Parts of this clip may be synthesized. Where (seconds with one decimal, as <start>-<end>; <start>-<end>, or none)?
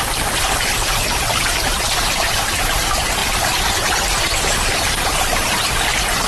none